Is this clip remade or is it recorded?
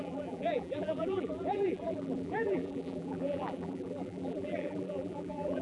remade